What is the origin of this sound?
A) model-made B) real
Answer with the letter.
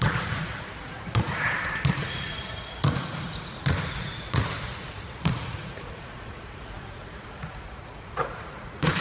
A